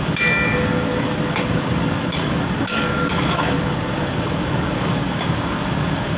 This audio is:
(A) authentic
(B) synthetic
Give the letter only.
B